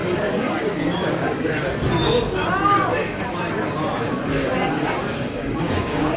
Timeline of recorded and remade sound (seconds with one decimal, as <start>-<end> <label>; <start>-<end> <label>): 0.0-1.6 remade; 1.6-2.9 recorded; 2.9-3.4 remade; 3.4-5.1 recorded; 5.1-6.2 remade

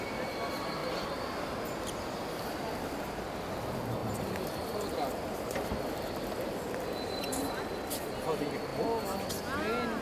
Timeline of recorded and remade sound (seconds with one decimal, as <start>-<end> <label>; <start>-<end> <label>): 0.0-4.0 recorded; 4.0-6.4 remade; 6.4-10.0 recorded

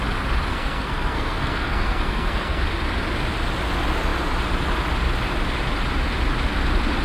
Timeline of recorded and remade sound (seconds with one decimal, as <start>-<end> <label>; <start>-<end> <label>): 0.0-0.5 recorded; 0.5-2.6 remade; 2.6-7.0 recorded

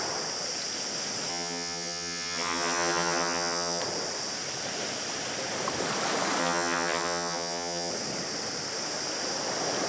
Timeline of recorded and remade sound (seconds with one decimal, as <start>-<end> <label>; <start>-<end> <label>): 0.0-1.3 recorded; 1.3-3.8 remade; 3.8-6.4 recorded; 6.4-7.9 remade; 7.9-9.9 recorded

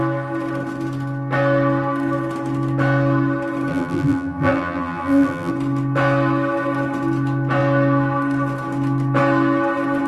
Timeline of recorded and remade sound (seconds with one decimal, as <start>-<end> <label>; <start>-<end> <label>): 0.0-3.7 recorded; 3.7-5.5 remade; 5.5-10.1 recorded

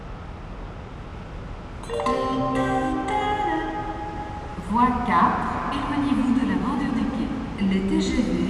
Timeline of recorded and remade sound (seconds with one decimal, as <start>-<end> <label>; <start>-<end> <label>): 0.0-6.4 recorded; 6.4-6.9 remade; 6.9-8.5 recorded